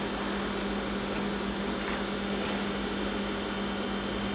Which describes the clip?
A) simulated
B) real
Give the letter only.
B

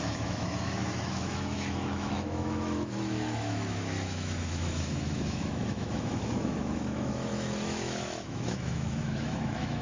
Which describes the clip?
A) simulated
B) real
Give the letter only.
A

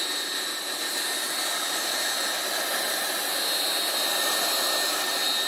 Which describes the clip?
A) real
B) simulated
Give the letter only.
A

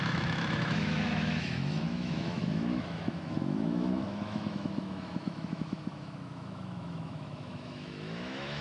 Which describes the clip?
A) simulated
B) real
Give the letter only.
A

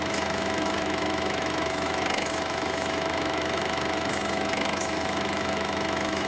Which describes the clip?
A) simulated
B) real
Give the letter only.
A